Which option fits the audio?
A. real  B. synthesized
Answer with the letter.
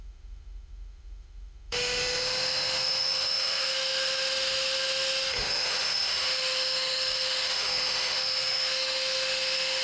B